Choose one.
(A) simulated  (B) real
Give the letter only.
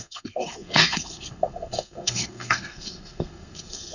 A